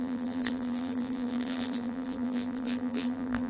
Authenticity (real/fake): fake